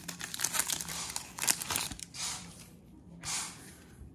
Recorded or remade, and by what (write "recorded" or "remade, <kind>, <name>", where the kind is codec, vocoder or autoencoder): remade, vocoder, BigVGAN v2